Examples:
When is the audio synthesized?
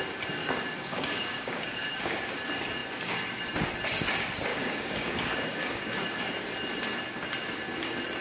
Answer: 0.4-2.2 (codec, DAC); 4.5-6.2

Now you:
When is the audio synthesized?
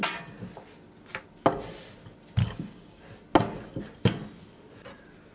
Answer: 2.4-3.0 (codec, DAC)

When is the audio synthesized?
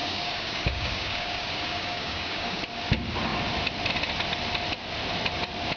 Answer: 0.0-2.6 (codec, DAC)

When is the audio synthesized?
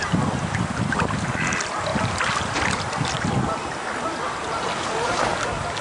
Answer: none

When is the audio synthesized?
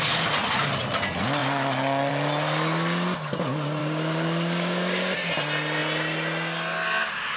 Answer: 3.8-5.3 (codec, DAC)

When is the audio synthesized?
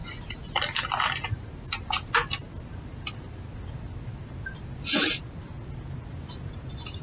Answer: none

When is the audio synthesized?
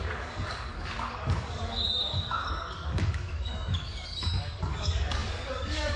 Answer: 0.0-6.0 (codec, DAC)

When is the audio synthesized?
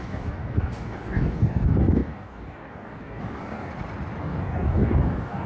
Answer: 0.0-3.7 (codec, DAC); 4.2-5.5